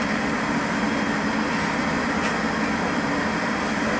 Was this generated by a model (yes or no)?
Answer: no